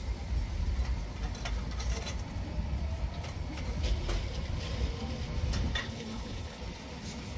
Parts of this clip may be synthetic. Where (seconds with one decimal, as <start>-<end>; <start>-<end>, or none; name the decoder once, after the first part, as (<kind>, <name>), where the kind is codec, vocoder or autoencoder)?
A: 5.8-6.6 (codec, HILCodec)